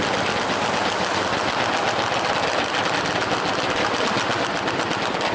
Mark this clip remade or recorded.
recorded